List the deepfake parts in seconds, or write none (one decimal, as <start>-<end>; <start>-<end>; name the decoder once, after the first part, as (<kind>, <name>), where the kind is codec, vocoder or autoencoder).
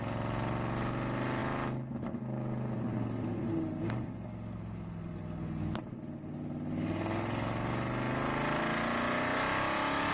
none